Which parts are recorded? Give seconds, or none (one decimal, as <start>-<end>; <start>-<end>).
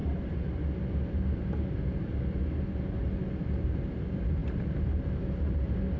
0.0-6.0